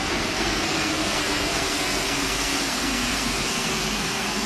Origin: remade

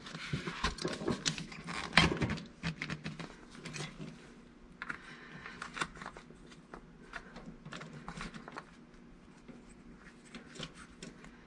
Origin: recorded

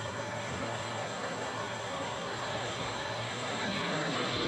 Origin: remade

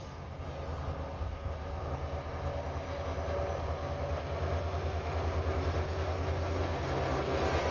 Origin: recorded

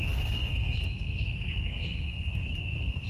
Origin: remade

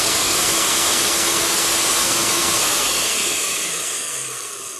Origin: remade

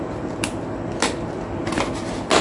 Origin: recorded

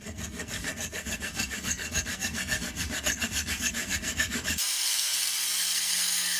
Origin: remade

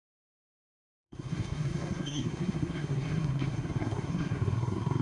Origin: remade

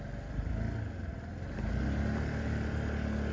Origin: recorded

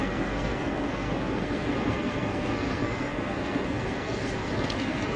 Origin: remade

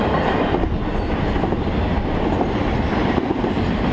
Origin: recorded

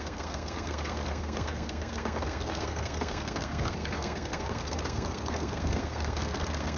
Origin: remade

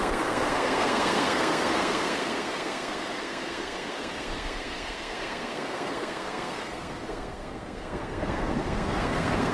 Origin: remade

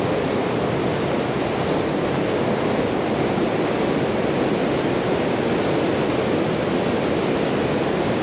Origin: recorded